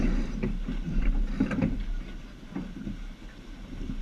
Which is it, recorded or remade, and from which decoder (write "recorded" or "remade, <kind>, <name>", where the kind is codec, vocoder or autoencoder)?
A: recorded